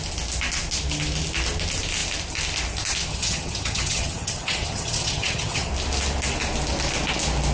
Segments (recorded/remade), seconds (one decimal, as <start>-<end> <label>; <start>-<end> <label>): 0.0-3.1 recorded; 3.1-5.7 remade; 5.7-7.5 recorded